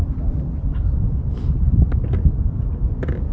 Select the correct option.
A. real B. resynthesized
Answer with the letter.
A